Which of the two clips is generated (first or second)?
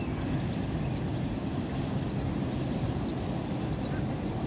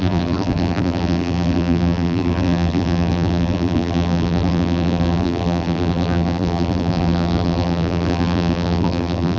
second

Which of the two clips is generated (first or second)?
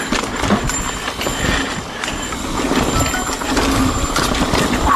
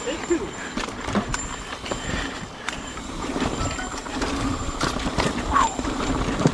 second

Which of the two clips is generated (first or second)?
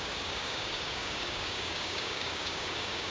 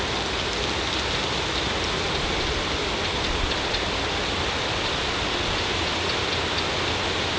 first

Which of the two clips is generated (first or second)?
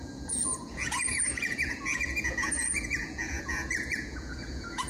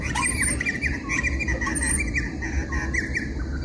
first